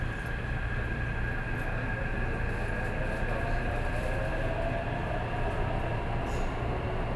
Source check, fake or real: real